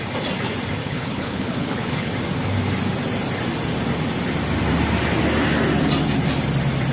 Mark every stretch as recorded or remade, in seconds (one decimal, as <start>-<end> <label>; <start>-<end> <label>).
0.0-0.8 recorded; 0.8-2.1 remade; 2.1-6.9 recorded